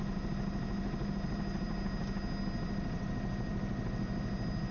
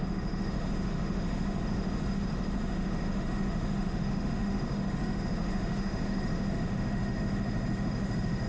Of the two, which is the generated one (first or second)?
second